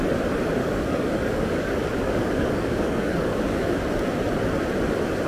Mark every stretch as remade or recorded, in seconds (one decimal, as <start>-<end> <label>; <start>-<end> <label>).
0.0-0.6 recorded; 0.6-3.8 remade; 3.8-5.3 recorded